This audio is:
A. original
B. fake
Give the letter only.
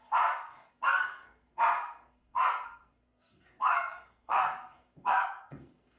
B